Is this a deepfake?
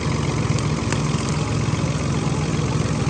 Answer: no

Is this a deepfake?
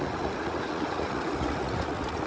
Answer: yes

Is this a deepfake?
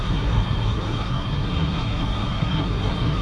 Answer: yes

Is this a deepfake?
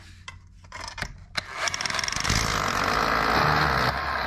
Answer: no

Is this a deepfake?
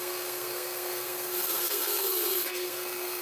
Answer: yes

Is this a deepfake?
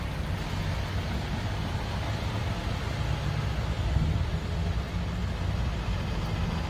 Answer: no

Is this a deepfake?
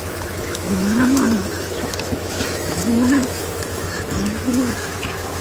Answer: yes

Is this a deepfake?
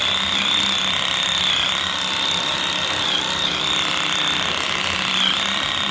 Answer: no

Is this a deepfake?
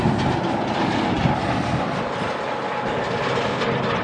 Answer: no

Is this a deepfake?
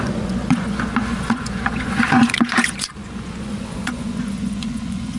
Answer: yes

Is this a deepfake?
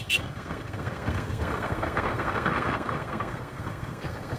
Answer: yes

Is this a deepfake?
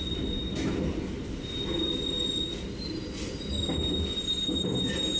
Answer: no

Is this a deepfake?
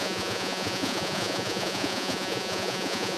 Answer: yes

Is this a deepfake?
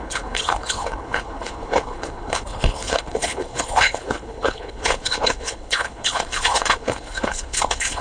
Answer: yes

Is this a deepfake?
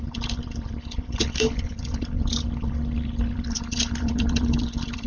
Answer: yes